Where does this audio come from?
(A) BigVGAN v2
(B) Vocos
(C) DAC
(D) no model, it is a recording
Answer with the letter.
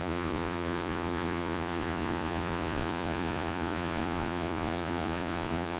B